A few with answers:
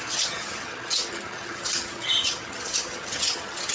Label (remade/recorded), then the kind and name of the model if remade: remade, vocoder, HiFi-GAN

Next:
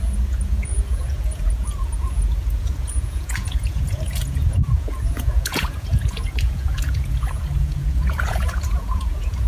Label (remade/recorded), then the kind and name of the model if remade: remade, vocoder, Vocos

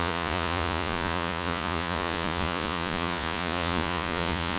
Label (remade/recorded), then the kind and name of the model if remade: remade, vocoder, Vocos